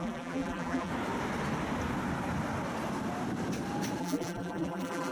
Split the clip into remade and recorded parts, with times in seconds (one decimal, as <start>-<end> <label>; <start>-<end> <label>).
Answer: 0.0-0.9 remade; 0.9-4.0 recorded; 4.0-5.1 remade